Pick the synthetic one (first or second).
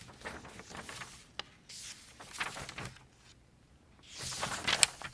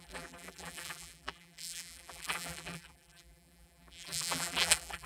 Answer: second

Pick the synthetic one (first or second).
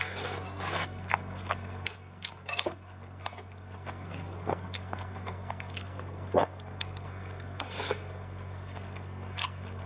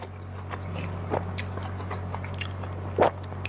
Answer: first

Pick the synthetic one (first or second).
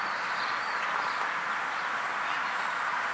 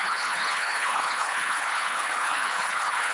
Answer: second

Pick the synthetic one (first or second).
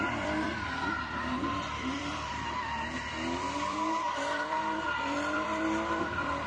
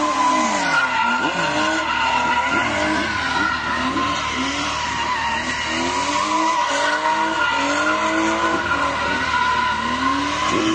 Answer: first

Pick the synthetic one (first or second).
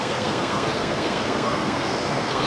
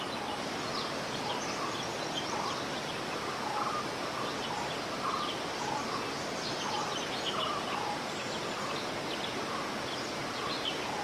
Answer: first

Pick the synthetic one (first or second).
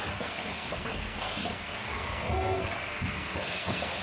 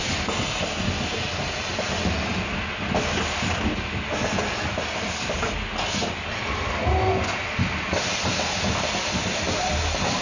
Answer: first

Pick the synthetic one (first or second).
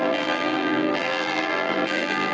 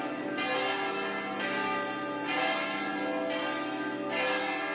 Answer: first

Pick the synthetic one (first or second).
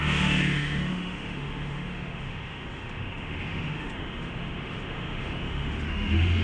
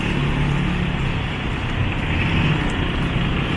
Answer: first